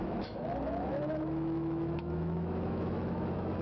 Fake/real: fake